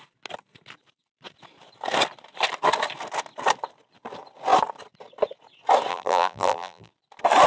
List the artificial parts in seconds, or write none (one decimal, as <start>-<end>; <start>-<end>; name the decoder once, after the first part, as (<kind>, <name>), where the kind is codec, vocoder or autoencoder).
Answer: 5.9-6.9 (vocoder, BigVGAN v2)